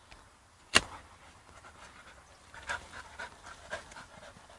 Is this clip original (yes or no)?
yes